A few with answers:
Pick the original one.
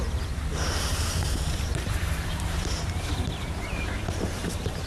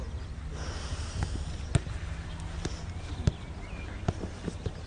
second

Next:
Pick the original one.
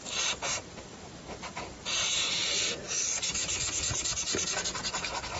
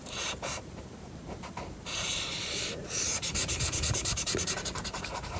first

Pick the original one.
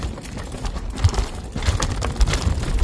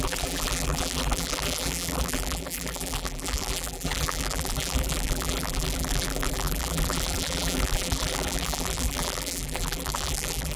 first